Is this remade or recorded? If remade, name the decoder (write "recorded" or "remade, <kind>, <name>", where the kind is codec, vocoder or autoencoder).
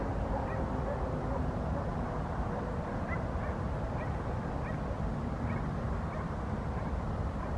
recorded